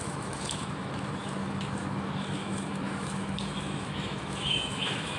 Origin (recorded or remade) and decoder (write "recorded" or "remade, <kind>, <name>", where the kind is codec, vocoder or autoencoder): remade, autoencoder, DAC-VAE